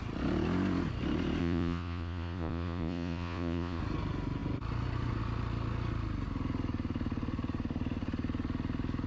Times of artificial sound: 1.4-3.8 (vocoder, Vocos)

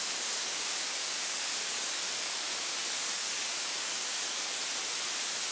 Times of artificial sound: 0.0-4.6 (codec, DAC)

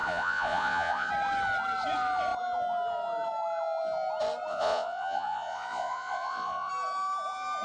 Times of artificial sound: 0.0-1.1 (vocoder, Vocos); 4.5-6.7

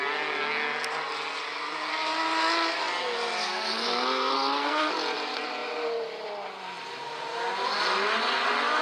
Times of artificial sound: 3.4-4.9 (codec, SNAC)

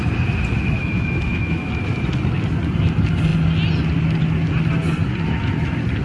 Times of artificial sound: 0.8-1.7 (autoencoder, DAC-VAE)

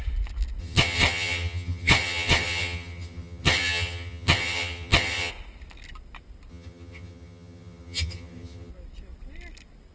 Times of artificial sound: 0.6-5.3 (vocoder, HiFi-GAN); 6.5-8.7